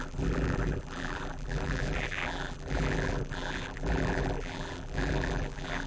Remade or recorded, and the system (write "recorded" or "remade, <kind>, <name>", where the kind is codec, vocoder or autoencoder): remade, vocoder, BigVGAN v2